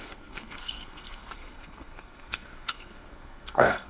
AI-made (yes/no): yes